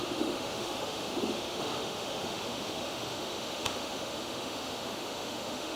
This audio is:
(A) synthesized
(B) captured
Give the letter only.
A